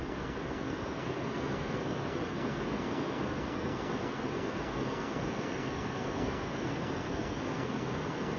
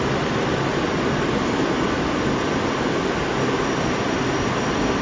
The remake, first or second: first